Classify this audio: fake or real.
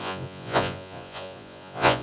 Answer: fake